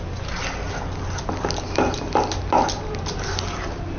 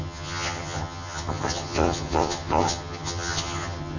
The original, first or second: first